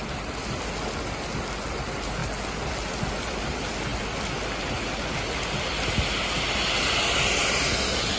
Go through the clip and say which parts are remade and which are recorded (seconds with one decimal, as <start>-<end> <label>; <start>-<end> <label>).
0.0-8.2 recorded

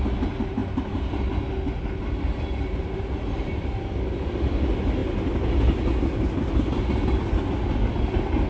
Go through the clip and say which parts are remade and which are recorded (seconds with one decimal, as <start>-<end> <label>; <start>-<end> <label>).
0.0-8.5 recorded

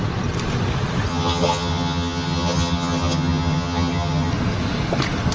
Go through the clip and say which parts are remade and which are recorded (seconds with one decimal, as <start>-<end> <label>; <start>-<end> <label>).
0.0-1.1 recorded; 1.1-4.3 remade; 4.3-5.3 recorded

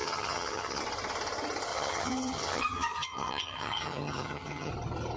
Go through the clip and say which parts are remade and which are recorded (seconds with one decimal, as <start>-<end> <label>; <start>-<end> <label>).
0.0-0.8 remade; 0.8-1.7 recorded; 1.7-4.7 remade; 4.7-5.2 recorded

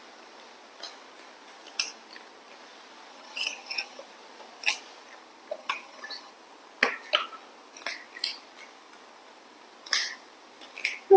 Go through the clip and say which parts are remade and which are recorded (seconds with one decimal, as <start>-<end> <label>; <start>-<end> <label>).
0.0-3.1 recorded; 3.1-4.0 remade; 4.0-5.6 recorded; 5.6-6.3 remade; 6.3-11.2 recorded

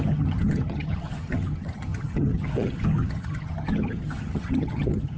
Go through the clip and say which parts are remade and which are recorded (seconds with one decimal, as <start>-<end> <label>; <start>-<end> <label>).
0.0-5.2 remade

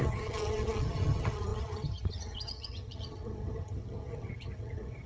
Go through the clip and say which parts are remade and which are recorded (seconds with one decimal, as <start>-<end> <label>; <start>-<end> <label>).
0.0-5.1 remade